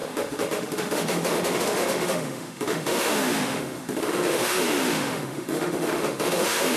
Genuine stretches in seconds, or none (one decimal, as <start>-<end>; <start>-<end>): none